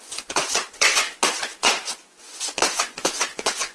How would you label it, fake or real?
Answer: fake